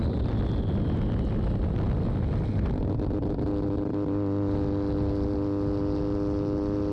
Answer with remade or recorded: recorded